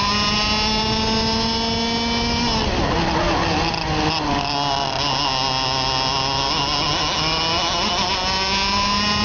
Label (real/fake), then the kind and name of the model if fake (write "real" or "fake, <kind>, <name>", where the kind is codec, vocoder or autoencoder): real